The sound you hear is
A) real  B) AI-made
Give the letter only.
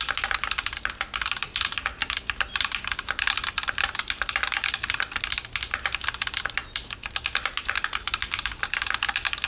A